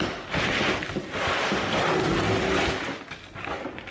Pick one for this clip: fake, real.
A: real